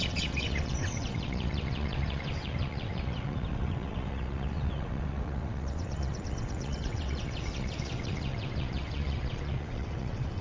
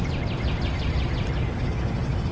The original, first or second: second